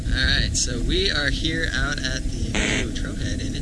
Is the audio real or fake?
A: fake